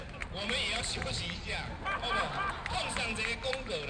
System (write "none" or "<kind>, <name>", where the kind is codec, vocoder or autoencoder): none